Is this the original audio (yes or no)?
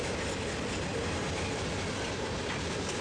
yes